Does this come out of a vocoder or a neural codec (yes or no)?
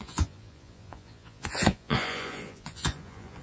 yes